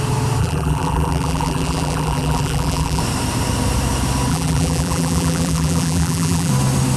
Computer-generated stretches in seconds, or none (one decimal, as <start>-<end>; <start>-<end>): 0.4-3.0; 4.3-6.5